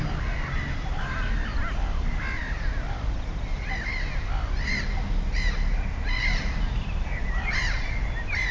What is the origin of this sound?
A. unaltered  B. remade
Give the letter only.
A